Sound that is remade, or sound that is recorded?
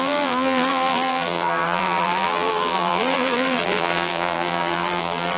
remade